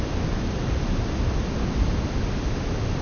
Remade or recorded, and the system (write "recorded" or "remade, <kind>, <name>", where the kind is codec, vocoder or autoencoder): recorded